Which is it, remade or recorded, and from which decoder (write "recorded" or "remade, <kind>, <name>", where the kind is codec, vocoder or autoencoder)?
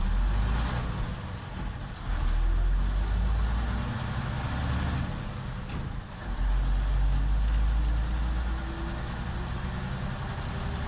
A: recorded